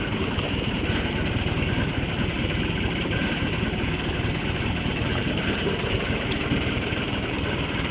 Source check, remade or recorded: remade